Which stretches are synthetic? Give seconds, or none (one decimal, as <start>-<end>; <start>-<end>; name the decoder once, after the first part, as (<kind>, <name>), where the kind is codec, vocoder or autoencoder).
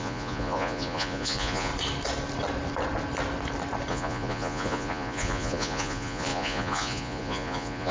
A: 0.0-1.7 (vocoder, Vocos); 3.9-7.9